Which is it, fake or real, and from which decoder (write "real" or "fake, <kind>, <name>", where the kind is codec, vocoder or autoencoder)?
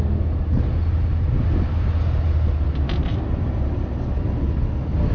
real